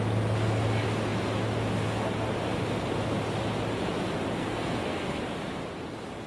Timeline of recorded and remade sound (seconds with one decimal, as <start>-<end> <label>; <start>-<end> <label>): 0.0-4.4 recorded; 4.4-5.2 remade; 5.2-6.3 recorded